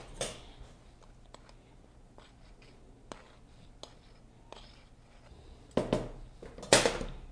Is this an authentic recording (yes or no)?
yes